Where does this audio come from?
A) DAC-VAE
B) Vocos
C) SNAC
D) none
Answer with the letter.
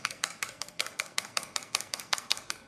C